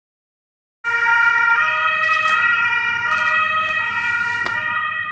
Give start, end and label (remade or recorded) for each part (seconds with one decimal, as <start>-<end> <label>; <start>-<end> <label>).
0.0-5.1 recorded